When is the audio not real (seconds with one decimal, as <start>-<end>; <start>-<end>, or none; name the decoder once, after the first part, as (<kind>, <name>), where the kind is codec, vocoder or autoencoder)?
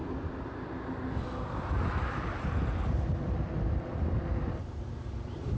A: 3.4-5.6 (vocoder, BigVGAN v2)